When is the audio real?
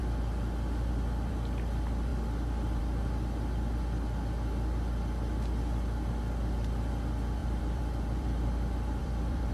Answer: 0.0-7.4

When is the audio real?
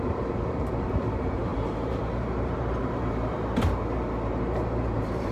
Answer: none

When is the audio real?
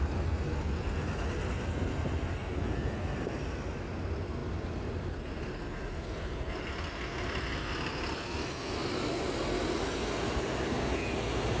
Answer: 0.0-11.6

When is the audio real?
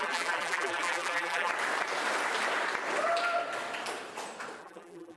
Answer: 1.5-4.6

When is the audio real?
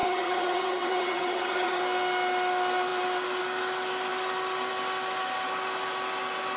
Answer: 1.8-6.6